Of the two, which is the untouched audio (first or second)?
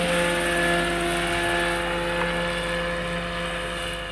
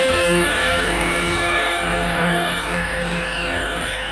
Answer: first